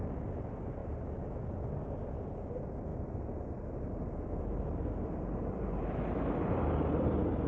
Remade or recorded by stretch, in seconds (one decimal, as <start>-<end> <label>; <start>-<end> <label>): 0.0-0.8 remade; 0.8-1.5 recorded; 1.5-7.5 remade